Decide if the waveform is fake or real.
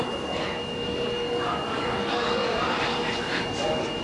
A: fake